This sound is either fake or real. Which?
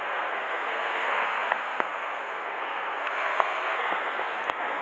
fake